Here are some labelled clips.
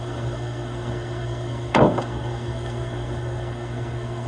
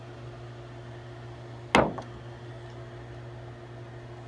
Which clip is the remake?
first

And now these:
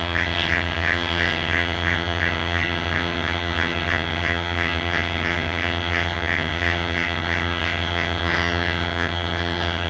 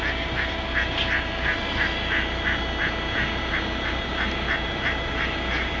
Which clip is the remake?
first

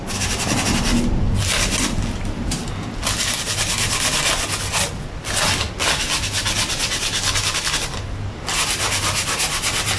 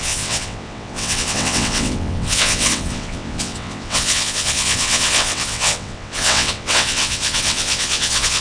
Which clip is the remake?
second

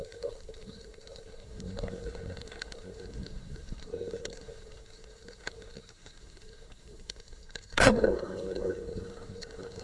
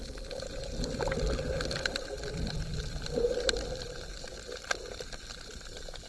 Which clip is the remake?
first